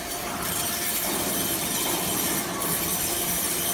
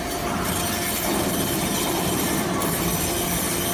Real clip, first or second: second